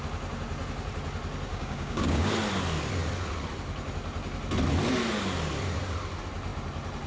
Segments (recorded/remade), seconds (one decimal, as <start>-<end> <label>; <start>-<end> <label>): 0.0-1.5 recorded; 1.5-2.3 remade; 2.3-7.1 recorded